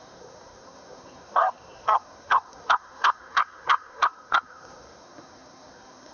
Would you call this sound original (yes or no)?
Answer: no